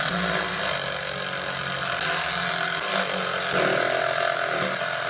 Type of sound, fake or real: real